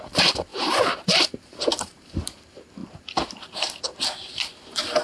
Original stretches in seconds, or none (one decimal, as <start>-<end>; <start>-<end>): 0.0-0.5; 2.4-2.8; 3.7-5.0